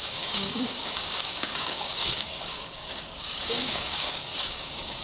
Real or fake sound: fake